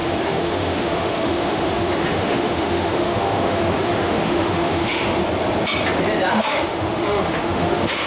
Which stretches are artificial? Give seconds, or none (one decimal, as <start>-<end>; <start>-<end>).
0.0-5.2; 6.3-8.1